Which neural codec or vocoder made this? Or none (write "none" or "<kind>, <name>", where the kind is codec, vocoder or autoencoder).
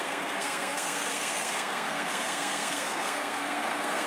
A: codec, SNAC